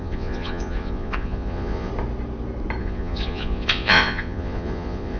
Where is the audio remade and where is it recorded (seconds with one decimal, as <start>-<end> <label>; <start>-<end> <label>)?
0.0-1.9 remade; 1.9-2.8 recorded; 2.8-5.2 remade